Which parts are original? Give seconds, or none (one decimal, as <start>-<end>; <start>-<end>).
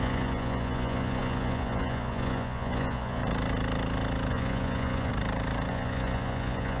3.2-4.3; 5.1-5.7